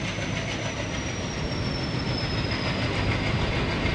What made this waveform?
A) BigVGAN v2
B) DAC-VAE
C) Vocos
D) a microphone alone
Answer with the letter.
D